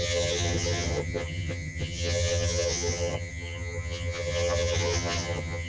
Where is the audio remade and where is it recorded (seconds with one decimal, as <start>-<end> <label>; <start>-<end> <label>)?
0.0-5.7 remade